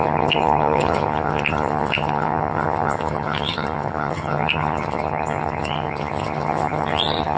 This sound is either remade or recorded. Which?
remade